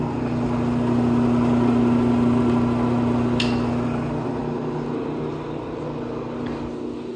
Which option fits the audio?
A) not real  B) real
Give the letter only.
B